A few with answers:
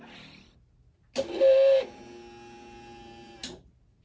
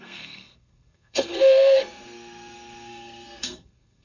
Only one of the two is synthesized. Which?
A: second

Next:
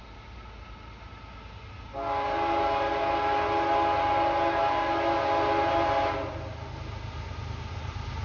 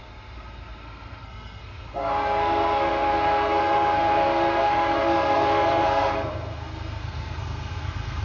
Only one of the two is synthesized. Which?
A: second